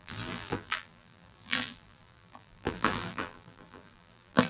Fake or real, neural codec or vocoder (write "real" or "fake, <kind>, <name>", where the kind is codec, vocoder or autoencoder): fake, vocoder, BigVGAN v2